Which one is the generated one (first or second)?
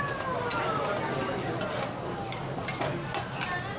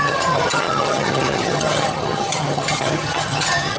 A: second